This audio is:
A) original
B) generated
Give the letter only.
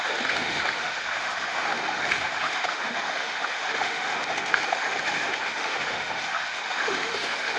B